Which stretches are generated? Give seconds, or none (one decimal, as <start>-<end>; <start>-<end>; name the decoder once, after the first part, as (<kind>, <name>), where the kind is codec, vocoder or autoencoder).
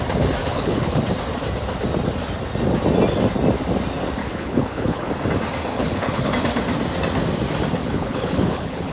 0.4-1.0 (codec, HILCodec); 4.2-5.1; 5.7-6.3; 7.8-8.9